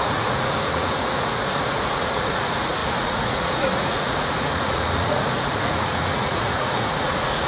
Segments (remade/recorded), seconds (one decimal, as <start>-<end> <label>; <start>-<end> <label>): 0.0-7.5 remade